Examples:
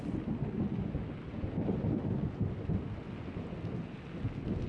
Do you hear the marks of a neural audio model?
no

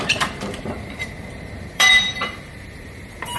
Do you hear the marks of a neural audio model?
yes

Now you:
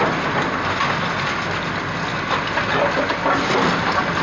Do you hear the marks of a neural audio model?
no